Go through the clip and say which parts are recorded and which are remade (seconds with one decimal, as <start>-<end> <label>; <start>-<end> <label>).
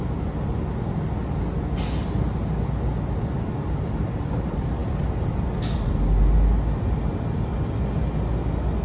0.0-8.8 recorded